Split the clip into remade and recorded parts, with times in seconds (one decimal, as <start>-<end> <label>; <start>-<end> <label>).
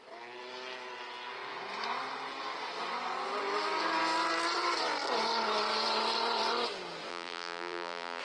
0.0-7.1 recorded; 7.1-8.2 remade